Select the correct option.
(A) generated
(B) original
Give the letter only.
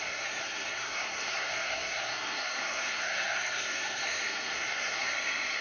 A